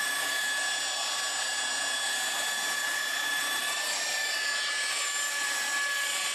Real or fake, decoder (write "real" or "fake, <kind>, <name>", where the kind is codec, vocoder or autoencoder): real